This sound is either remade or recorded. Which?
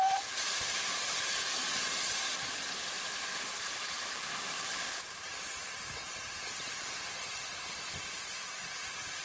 remade